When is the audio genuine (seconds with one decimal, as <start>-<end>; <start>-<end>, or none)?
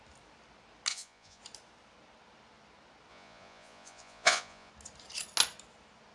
0.0-0.9; 1.4-3.1; 4.7-6.1